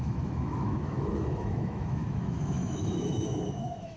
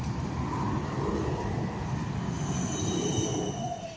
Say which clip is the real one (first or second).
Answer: second